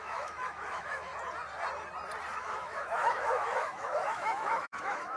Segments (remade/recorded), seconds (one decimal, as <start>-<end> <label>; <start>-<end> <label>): 0.0-1.1 remade; 1.1-2.4 recorded; 2.4-5.2 remade